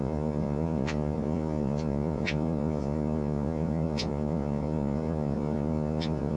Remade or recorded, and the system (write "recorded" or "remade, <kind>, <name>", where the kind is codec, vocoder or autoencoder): remade, vocoder, Vocos